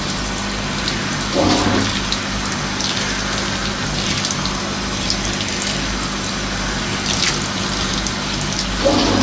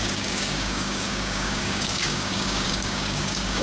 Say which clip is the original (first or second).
first